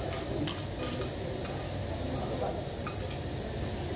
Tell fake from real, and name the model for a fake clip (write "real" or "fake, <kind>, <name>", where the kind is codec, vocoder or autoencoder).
real